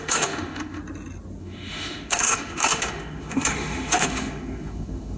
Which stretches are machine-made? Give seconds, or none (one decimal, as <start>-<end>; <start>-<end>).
0.0-0.8; 1.4-5.2